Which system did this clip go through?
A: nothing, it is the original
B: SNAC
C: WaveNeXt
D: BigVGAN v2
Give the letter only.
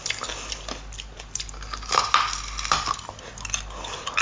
A